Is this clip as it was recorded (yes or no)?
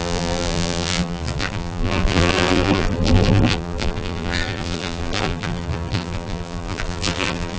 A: no